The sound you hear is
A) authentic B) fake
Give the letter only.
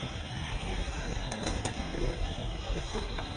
B